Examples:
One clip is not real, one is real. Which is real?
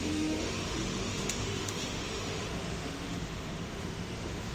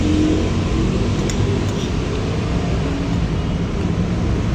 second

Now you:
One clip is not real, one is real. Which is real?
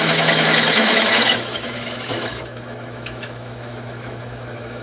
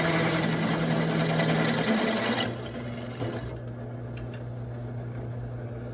second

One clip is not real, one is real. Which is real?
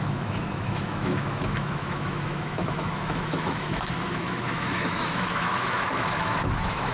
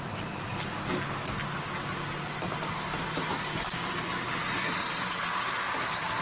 second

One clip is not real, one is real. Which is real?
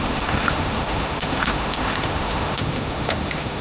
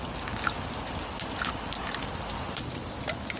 second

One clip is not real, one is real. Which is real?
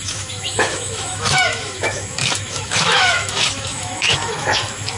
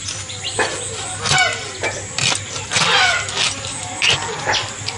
second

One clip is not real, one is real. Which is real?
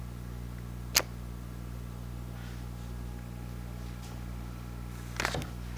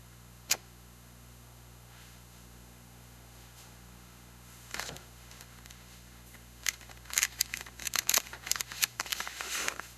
first